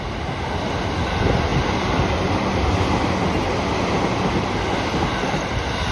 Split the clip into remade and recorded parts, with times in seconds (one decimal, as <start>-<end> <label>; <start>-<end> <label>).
0.0-5.9 recorded